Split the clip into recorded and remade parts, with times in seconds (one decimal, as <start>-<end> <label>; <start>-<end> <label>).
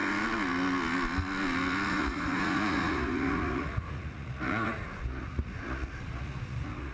0.0-1.9 recorded; 1.9-6.9 remade